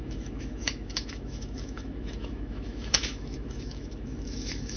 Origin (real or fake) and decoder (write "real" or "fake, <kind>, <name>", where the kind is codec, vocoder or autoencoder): fake, autoencoder, DAC-VAE